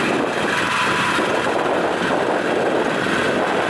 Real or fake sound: real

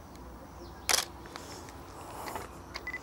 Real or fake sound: real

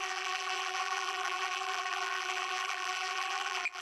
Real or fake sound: fake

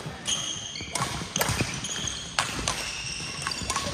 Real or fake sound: real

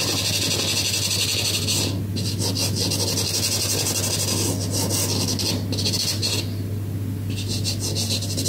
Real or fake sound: real